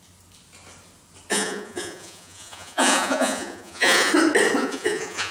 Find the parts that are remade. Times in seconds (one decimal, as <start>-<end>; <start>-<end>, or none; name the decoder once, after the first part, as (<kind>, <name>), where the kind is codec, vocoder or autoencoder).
1.3-4.1 (vocoder, Vocos); 4.6-5.3